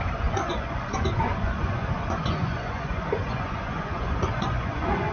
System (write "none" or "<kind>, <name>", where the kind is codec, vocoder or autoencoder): vocoder, Vocos